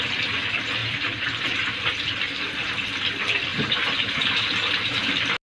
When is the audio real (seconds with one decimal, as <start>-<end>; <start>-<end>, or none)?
0.0-0.8; 2.4-3.5; 5.1-5.6